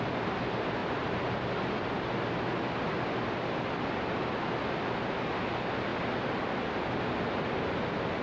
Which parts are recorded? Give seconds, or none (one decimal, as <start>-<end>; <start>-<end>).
0.0-8.2